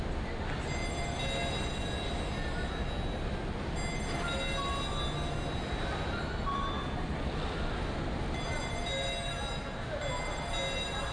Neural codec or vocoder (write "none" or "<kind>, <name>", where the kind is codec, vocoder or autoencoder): none